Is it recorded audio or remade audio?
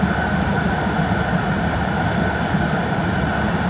recorded